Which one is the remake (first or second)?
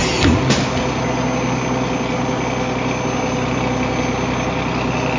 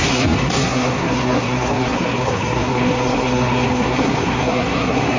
second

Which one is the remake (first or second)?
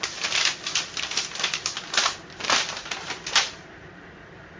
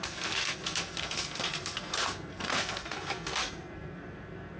second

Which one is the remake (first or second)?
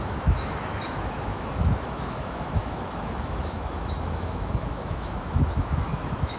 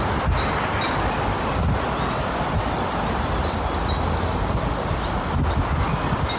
first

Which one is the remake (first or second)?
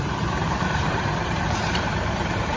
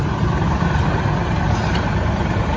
first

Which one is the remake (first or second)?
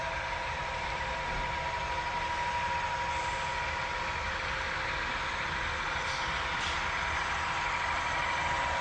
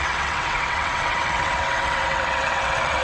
second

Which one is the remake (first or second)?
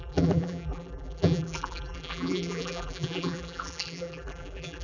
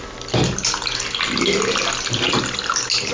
first